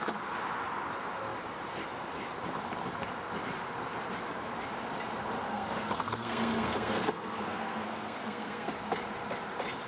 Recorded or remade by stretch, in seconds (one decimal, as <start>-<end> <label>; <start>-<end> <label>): 0.0-5.5 recorded; 5.5-8.7 remade; 8.7-9.9 recorded